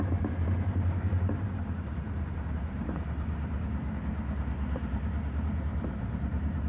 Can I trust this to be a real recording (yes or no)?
no